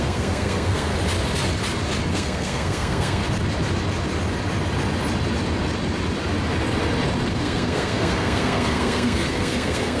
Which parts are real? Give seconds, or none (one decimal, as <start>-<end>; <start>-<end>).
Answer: 0.9-2.1; 3.2-7.3